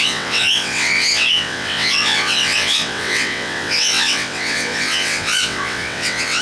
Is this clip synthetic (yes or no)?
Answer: yes